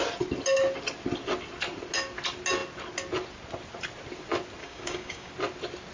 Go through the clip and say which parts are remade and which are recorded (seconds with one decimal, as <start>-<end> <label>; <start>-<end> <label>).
0.0-4.6 recorded; 4.6-5.3 remade; 5.3-5.9 recorded